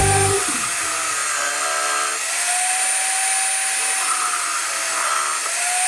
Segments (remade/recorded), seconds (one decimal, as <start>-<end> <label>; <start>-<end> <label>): 0.0-5.9 recorded